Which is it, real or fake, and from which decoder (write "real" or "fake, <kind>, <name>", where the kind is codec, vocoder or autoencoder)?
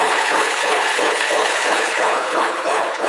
fake, codec, HILCodec